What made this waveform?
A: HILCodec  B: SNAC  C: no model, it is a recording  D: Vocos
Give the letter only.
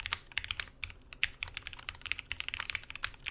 C